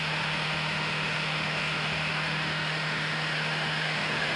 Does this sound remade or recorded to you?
remade